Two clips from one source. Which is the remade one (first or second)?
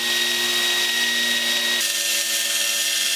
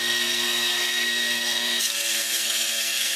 second